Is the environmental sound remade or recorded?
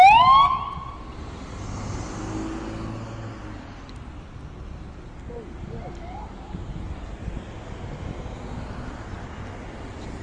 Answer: recorded